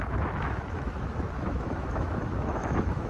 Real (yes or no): no